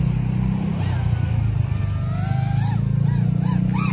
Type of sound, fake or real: real